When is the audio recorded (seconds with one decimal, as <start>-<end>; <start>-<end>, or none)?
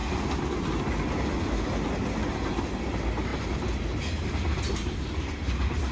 0.0-5.9